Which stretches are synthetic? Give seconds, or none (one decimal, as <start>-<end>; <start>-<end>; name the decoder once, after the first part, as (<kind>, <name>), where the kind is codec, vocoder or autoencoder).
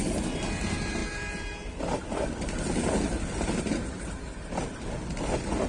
none